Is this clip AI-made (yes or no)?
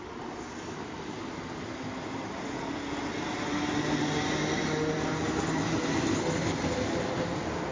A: no